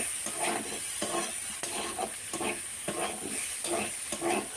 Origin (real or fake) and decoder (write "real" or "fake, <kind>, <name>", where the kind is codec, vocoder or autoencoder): real